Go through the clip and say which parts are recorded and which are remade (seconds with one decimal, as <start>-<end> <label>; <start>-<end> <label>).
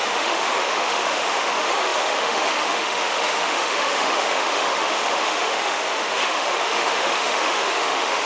0.0-8.3 remade